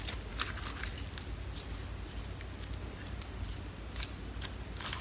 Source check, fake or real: real